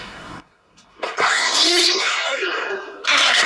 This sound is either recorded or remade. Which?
remade